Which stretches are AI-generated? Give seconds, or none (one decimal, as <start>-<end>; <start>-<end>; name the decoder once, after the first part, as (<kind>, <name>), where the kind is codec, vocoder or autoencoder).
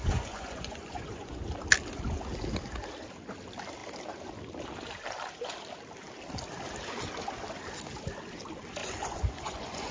0.0-1.4 (vocoder, Vocos); 8.8-9.9